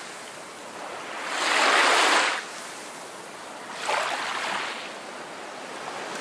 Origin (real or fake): real